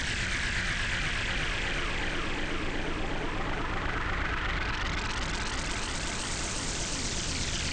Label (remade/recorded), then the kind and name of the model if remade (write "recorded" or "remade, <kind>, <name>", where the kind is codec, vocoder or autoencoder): recorded